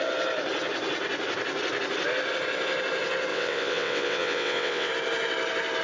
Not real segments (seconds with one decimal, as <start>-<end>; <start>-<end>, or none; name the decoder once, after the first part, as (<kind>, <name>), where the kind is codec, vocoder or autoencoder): 3.3-4.9 (vocoder, WaveNeXt)